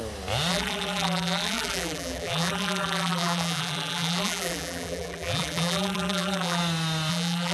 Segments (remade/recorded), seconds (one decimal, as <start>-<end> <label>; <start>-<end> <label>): 0.0-0.5 recorded; 0.5-6.6 remade; 6.6-7.1 recorded; 7.1-7.5 remade